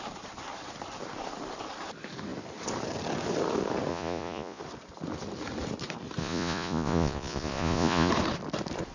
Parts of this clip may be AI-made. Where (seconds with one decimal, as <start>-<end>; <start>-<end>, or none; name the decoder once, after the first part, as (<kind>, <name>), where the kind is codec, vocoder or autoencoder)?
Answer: 3.9-4.6 (vocoder, Vocos); 6.2-8.1